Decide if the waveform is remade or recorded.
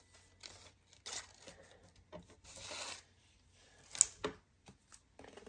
recorded